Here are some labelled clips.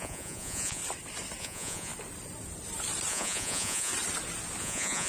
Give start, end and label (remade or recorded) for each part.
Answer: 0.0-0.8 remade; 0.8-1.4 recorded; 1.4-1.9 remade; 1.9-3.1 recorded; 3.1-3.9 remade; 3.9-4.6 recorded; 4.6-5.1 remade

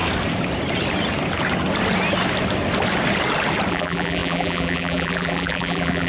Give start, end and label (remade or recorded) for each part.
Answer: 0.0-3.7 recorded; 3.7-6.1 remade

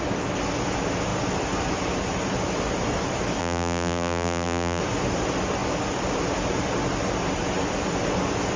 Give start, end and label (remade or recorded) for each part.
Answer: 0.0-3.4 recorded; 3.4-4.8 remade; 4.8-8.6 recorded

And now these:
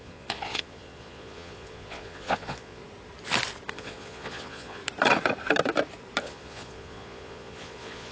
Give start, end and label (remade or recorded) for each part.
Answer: 0.0-2.8 remade; 2.8-3.7 recorded; 3.7-4.8 remade; 4.8-6.2 recorded; 6.2-8.1 remade